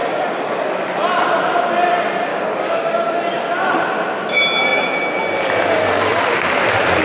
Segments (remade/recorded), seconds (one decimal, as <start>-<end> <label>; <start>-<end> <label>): 0.0-2.3 recorded; 2.3-3.2 remade; 3.2-7.0 recorded

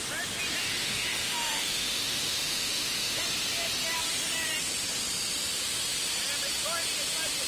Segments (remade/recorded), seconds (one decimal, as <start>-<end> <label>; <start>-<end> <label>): 0.0-0.6 recorded; 0.6-3.2 remade; 3.2-7.5 recorded

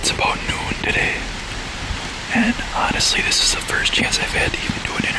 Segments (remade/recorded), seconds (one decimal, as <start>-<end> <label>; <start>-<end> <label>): 0.0-1.2 recorded; 1.2-2.5 remade; 2.5-3.9 recorded; 3.9-5.2 remade

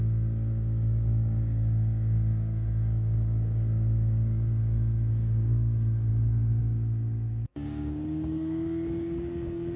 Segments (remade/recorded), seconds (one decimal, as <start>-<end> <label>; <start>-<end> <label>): 0.0-6.1 remade; 6.1-6.6 recorded; 6.6-9.8 remade

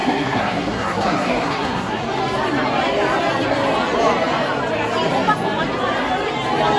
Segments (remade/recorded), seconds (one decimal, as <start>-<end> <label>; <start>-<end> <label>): 0.0-2.0 remade; 2.0-6.8 recorded

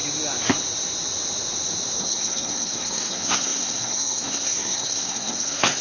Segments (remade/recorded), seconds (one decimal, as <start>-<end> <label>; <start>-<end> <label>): 0.0-2.0 recorded; 2.0-5.8 remade

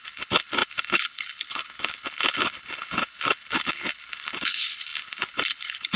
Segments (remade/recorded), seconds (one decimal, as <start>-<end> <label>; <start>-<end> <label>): 0.0-6.0 remade

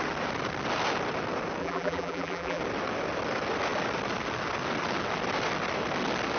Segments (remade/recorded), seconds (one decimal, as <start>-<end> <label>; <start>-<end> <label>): 0.0-1.6 recorded; 1.6-2.6 remade; 2.6-6.4 recorded